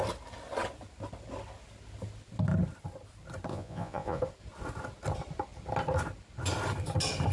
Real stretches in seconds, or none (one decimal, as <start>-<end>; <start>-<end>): 0.0-3.5; 4.2-7.3